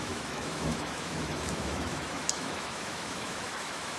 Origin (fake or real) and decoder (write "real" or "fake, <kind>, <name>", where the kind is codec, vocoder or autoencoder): fake, autoencoder, DAC-VAE